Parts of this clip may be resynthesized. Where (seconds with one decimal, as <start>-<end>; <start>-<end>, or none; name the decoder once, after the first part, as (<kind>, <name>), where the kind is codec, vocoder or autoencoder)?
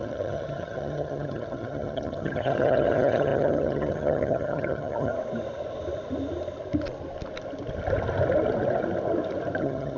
0.0-5.1 (vocoder, HiFi-GAN); 9.6-10.0